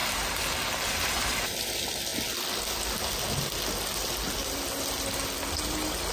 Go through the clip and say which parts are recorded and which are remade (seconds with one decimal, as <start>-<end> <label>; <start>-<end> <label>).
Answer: 0.0-0.9 recorded; 0.9-2.1 remade; 2.1-5.6 recorded; 5.6-6.1 remade